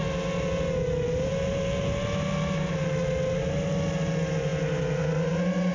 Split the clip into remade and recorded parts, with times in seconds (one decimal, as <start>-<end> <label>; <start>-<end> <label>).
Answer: 0.0-5.7 recorded